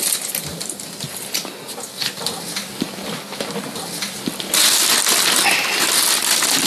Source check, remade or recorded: recorded